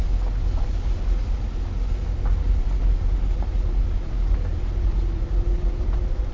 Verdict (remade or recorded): recorded